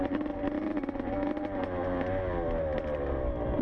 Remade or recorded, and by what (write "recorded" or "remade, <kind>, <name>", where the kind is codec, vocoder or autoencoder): recorded